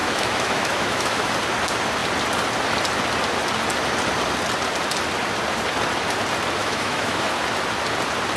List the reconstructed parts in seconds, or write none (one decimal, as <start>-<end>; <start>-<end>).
0.0-1.3; 6.6-7.3